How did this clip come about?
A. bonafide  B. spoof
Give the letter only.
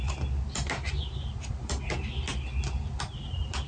A